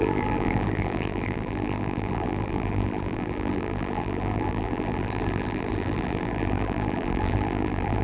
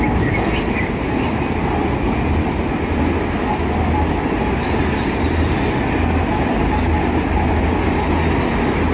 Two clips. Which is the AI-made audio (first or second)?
first